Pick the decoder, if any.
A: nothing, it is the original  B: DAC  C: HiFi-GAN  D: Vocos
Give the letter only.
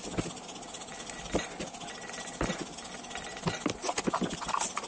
A